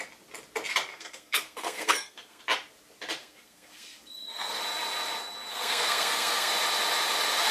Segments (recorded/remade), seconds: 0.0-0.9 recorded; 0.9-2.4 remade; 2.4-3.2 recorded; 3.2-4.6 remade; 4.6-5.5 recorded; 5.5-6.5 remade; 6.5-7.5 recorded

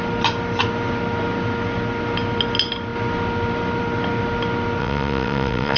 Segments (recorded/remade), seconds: 0.0-4.8 recorded; 4.8-5.8 remade

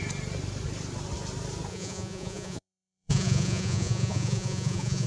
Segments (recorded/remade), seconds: 0.0-1.7 recorded; 1.7-5.1 remade

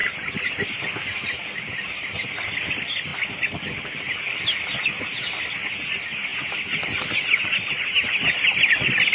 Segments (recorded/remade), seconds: 0.0-9.1 recorded

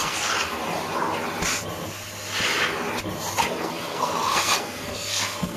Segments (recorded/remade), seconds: 0.0-0.6 remade; 0.6-3.6 recorded; 3.6-5.6 remade

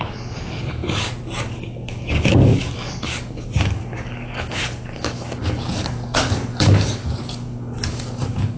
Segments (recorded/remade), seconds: 0.0-0.8 remade; 0.8-1.4 recorded; 1.4-8.6 remade

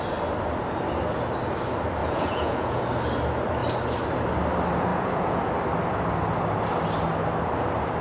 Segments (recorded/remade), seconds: 0.0-2.0 recorded; 2.0-2.8 remade; 2.8-4.9 recorded; 4.9-5.5 remade; 5.5-8.0 recorded